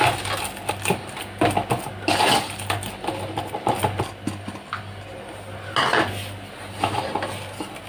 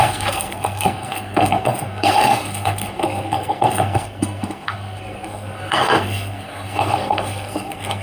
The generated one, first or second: second